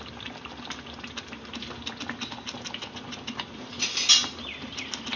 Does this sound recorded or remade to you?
recorded